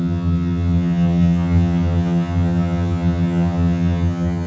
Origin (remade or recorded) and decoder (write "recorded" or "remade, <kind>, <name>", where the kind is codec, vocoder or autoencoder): remade, vocoder, HiFi-GAN